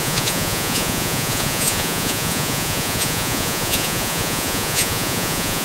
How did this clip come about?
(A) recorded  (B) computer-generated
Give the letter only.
B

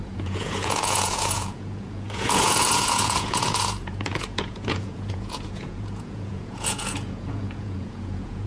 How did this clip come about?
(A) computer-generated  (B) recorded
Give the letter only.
A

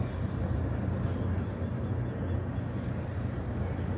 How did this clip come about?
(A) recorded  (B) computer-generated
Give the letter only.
A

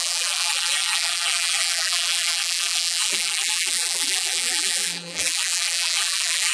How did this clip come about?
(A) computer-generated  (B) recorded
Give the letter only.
A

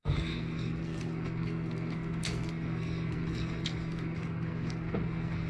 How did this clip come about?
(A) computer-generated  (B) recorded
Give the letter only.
A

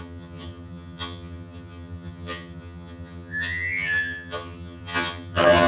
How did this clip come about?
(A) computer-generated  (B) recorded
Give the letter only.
A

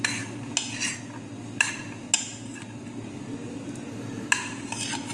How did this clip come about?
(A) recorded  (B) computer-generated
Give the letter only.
A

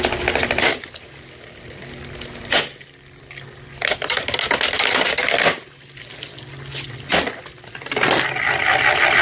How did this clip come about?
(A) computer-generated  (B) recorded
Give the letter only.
B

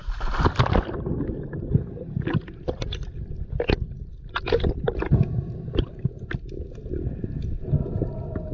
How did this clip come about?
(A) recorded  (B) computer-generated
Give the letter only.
A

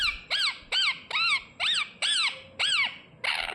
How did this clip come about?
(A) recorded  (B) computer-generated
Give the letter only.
A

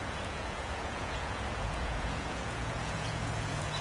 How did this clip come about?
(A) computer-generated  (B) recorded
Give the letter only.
A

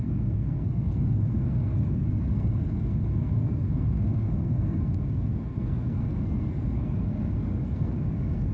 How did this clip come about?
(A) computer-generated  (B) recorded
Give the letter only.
A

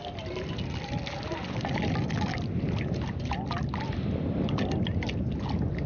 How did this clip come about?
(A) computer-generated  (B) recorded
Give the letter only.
B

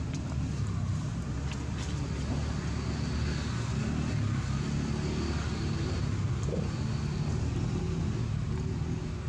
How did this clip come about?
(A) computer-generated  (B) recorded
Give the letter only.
B